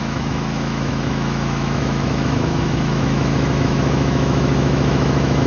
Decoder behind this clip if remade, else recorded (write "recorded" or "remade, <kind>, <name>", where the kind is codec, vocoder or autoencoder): remade, autoencoder, DAC-VAE